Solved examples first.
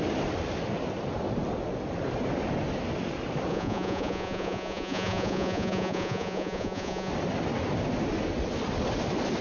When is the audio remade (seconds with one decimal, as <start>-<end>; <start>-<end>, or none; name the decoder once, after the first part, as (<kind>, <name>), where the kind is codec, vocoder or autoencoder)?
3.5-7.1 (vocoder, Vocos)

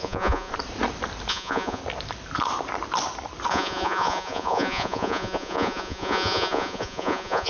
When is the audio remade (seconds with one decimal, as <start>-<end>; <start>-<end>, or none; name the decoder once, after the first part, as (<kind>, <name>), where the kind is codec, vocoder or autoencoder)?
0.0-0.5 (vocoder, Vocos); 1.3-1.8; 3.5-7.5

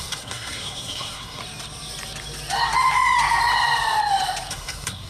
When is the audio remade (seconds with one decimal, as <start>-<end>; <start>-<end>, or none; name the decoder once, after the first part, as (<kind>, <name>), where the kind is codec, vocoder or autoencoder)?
0.0-1.4 (codec, SNAC); 4.5-5.1